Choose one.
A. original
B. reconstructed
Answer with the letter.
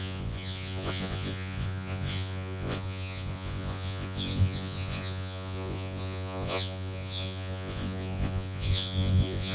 B